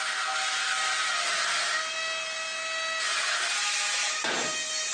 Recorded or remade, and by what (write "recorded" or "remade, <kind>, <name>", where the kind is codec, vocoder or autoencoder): recorded